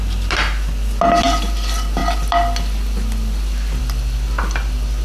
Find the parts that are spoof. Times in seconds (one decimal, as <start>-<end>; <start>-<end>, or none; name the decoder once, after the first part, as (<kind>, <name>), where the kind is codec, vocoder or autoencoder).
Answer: none